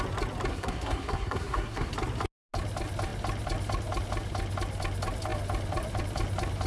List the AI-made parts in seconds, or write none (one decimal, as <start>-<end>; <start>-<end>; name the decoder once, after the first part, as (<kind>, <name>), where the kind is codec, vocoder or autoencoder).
0.5-1.9 (codec, SNAC)